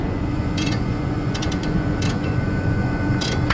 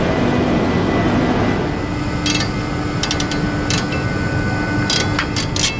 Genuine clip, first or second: second